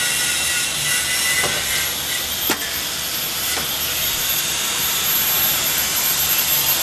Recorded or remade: recorded